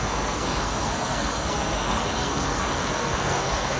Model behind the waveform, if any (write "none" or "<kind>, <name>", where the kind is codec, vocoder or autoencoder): codec, SNAC